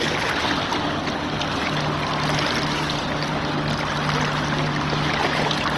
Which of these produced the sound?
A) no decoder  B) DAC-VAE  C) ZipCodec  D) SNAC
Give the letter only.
A